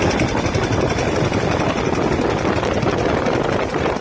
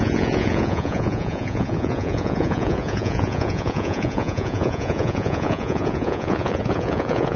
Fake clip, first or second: second